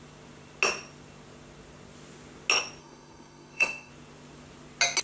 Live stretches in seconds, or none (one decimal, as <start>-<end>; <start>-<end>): 0.0-2.8; 3.9-5.0